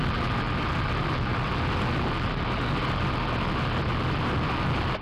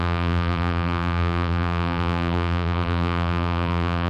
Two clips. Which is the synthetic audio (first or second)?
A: second